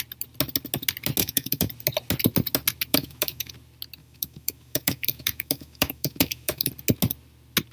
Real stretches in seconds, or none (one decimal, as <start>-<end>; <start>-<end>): 0.0-1.2; 1.7-2.9; 3.5-4.0; 6.7-7.7